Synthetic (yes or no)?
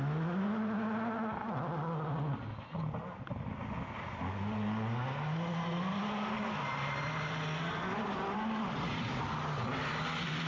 no